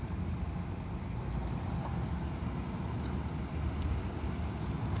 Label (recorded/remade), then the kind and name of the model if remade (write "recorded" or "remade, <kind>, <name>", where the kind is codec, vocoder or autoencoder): recorded